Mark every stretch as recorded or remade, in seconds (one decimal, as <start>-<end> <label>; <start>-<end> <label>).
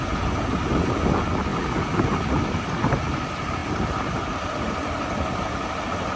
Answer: 0.0-6.2 recorded